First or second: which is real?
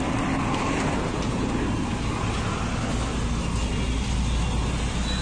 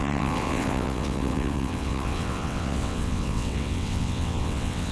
first